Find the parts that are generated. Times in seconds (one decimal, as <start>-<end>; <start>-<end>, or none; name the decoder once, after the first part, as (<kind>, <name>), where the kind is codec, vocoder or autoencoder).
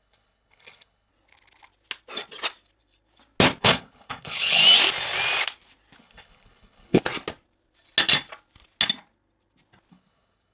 0.0-1.1 (codec, HILCodec); 3.6-4.6; 6.0-7.0; 9.9-10.5